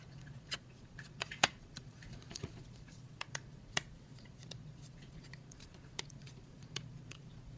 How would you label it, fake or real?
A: fake